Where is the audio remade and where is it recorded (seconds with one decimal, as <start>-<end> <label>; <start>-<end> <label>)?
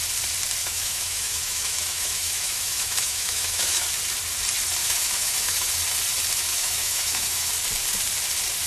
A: 0.0-0.6 recorded; 0.6-3.9 remade; 3.9-4.8 recorded; 4.8-5.7 remade; 5.7-6.5 recorded; 6.5-7.5 remade; 7.5-8.7 recorded